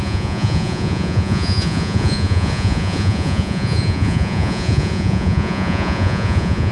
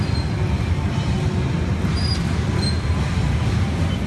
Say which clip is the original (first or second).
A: second